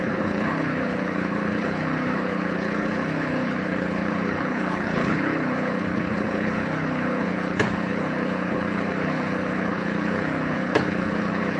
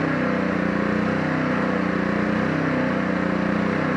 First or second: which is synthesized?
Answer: first